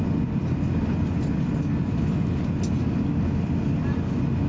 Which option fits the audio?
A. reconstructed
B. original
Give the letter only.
B